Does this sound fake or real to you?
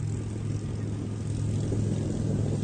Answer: real